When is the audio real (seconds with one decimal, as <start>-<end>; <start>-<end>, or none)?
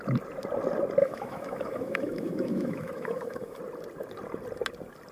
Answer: 0.0-1.0; 3.6-5.1